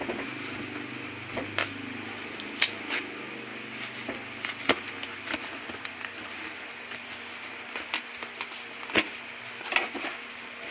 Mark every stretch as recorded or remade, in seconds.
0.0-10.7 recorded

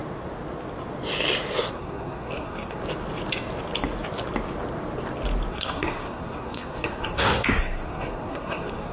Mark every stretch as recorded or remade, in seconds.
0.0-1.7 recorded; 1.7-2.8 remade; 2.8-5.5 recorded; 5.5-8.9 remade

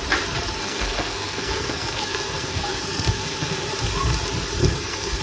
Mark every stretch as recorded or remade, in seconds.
0.0-0.6 recorded; 0.6-3.7 remade; 3.7-4.6 recorded; 4.6-5.2 remade